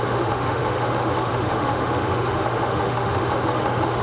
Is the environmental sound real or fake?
fake